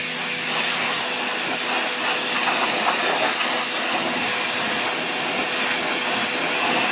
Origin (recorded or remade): recorded